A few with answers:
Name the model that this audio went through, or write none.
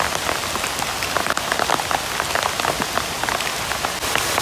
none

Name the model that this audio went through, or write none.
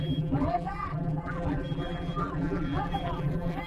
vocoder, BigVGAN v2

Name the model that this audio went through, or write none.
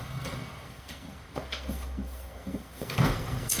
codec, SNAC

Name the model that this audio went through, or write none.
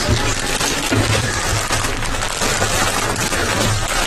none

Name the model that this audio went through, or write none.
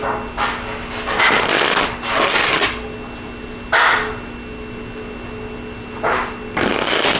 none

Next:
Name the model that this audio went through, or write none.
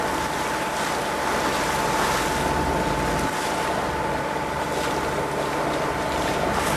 none